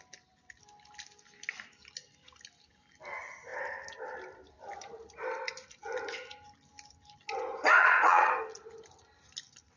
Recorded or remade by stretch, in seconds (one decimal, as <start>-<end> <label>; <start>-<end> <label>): 0.0-7.8 recorded; 7.8-8.3 remade; 8.3-9.8 recorded